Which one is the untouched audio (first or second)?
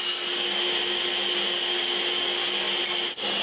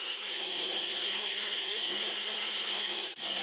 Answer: first